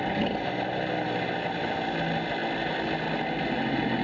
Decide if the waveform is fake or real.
real